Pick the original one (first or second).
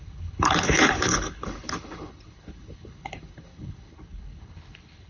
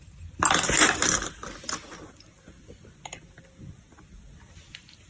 second